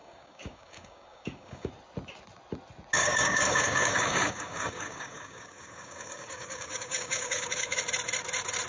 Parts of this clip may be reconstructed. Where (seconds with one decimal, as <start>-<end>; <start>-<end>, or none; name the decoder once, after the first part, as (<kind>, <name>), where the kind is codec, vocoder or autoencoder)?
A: 0.0-1.7 (codec, DAC); 3.0-7.8